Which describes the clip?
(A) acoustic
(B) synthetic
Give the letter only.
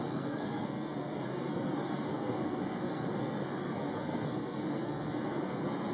B